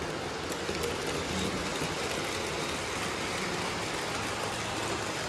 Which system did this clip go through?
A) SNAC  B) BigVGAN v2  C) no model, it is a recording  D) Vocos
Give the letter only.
C